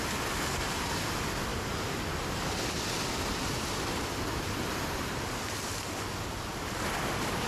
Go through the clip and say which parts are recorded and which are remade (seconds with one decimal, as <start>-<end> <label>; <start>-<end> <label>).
0.0-7.5 recorded